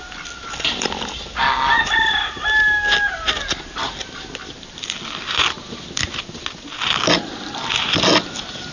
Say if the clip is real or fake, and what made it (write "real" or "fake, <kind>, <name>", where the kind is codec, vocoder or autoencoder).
real